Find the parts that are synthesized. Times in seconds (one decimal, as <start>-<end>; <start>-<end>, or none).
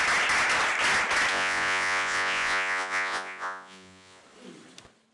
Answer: 1.3-4.2